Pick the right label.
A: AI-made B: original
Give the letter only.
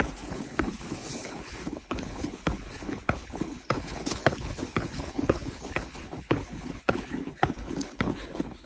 A